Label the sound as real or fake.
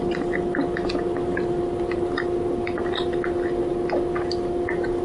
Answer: real